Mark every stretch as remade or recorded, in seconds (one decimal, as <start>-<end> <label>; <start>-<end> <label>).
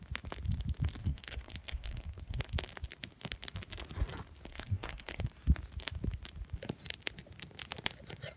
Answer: 0.0-1.0 recorded; 1.0-2.4 remade; 2.4-4.5 recorded; 4.5-5.2 remade; 5.2-8.4 recorded